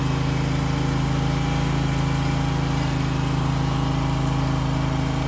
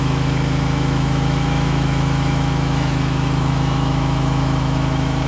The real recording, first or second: first